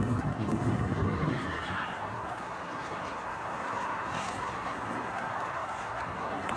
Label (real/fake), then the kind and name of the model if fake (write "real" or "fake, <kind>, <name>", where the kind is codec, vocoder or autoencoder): fake, codec, SNAC